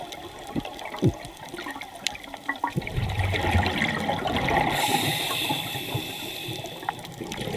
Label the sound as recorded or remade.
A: remade